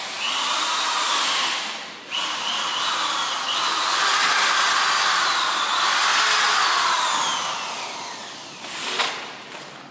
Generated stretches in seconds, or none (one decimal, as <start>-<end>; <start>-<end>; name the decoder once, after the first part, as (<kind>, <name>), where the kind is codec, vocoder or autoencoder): none